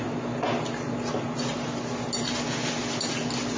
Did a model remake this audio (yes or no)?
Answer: no